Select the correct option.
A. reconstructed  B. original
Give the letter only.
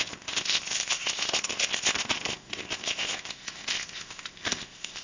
A